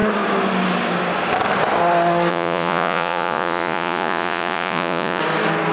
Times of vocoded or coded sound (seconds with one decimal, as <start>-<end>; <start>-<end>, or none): 2.3-5.2